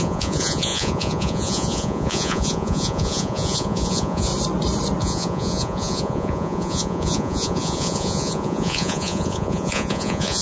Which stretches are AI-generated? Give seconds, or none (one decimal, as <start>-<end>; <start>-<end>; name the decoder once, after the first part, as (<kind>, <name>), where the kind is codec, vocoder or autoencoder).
0.0-4.3 (vocoder, Vocos); 5.0-10.4